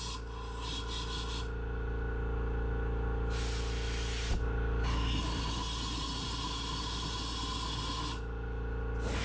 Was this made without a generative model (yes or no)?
yes